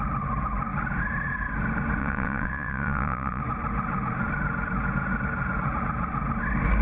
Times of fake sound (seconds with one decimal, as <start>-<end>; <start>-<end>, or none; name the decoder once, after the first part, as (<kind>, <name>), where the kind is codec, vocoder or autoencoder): 2.0-3.4 (vocoder, WaveNeXt)